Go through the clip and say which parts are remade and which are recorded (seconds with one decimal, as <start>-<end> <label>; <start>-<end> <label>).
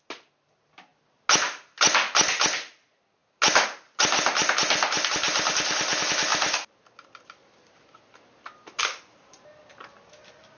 0.0-10.6 recorded